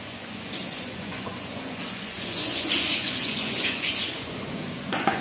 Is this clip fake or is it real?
fake